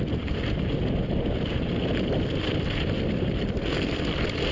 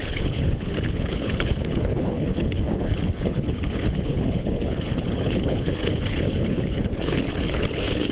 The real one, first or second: first